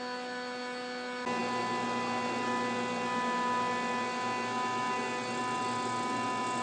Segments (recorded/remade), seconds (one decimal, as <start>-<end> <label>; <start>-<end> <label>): 0.0-6.6 recorded

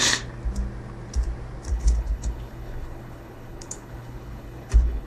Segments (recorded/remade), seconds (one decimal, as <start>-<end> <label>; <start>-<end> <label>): 0.0-1.7 recorded; 1.7-5.1 remade

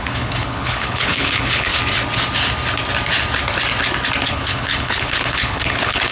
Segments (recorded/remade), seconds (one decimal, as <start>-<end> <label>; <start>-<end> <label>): 0.0-1.7 remade; 1.7-4.3 recorded; 4.3-6.1 remade

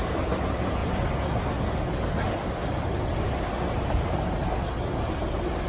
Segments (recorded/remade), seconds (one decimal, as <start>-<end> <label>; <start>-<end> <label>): 0.0-5.7 recorded

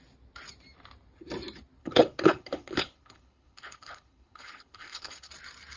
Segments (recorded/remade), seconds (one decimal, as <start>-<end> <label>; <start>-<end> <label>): 0.0-1.8 recorded; 1.8-5.3 remade; 5.3-5.8 recorded

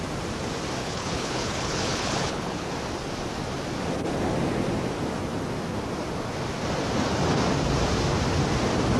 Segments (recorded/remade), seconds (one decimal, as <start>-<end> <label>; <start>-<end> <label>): 0.0-0.8 recorded; 0.8-2.7 remade; 2.7-9.0 recorded

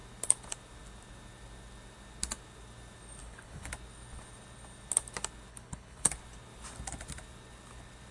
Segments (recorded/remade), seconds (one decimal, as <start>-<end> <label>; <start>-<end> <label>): 0.0-3.2 recorded; 3.2-3.7 remade; 3.7-5.5 recorded; 5.5-6.1 remade; 6.1-8.1 recorded